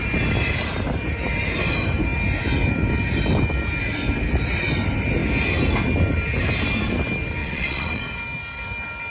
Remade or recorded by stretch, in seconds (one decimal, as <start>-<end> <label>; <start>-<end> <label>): 0.0-7.4 recorded; 7.4-8.0 remade; 8.0-9.1 recorded